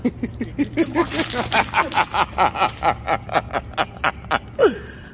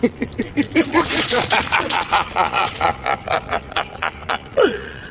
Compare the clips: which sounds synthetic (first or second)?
second